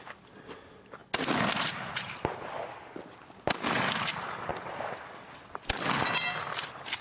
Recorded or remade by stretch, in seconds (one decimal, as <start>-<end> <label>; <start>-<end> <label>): 0.0-7.0 recorded